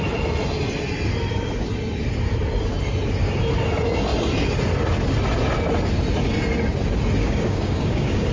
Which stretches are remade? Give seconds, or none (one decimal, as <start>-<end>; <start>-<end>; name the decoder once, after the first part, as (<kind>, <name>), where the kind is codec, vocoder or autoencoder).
7.2-8.3 (codec, DAC)